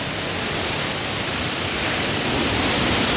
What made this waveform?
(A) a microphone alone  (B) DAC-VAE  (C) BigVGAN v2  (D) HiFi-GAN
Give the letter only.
A